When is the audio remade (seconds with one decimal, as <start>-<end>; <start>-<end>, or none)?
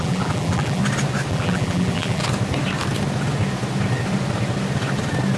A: 0.0-0.8; 1.3-2.2